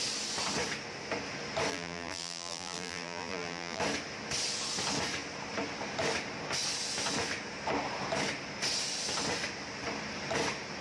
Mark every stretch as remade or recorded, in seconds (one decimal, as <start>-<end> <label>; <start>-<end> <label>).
0.0-1.7 recorded; 1.7-3.8 remade; 3.8-10.8 recorded